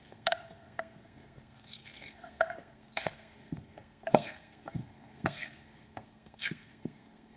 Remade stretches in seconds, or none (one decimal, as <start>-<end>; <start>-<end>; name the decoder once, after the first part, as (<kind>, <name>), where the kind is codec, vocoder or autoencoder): 0.0-7.4 (codec, SNAC)

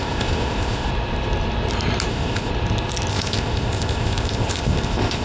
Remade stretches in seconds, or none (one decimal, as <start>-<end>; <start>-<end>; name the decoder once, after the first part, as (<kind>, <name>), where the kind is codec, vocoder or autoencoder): 0.0-0.9 (codec, ZipCodec); 2.1-2.5; 3.1-5.2

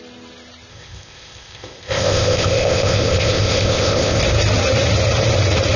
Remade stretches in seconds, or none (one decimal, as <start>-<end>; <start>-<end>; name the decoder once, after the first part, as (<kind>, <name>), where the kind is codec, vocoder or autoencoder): 0.7-4.2 (codec, ZipCodec)

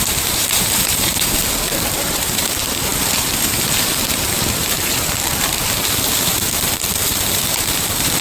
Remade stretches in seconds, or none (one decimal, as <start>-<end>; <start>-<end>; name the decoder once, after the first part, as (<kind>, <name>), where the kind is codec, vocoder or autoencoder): 0.0-8.2 (vocoder, BigVGAN v2)

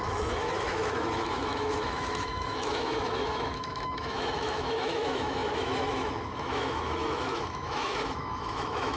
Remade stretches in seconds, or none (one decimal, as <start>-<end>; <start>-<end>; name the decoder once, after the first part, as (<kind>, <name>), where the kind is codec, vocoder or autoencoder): 0.0-9.0 (autoencoder, DAC-VAE)

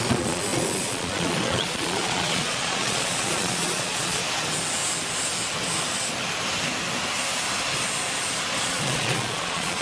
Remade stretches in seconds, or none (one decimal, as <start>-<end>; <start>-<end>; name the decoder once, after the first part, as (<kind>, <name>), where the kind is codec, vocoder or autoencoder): 0.0-4.2 (vocoder, Vocos); 8.6-9.8

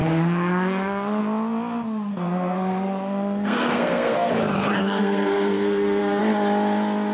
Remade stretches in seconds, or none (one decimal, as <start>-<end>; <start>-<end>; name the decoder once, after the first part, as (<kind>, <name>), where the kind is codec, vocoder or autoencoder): 0.0-1.2 (codec, SNAC); 2.1-4.3; 4.8-6.2